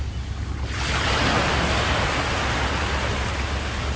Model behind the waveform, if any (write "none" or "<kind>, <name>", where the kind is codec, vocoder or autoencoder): none